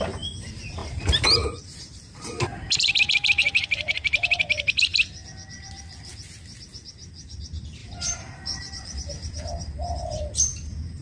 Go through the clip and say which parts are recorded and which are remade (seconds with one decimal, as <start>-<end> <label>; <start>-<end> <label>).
0.0-0.8 recorded; 0.8-2.9 remade; 2.9-3.4 recorded; 3.4-4.4 remade; 4.4-7.8 recorded; 7.8-10.2 remade; 10.2-11.0 recorded